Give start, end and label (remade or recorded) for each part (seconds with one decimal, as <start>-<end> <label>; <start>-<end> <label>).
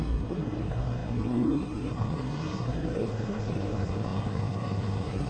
0.0-5.3 remade